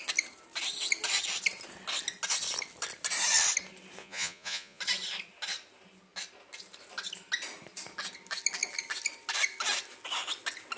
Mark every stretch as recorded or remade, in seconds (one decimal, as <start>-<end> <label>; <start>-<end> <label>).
0.0-4.0 recorded; 4.0-4.8 remade; 4.8-10.8 recorded